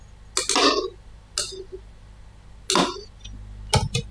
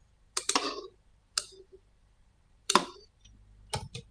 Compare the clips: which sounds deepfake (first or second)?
second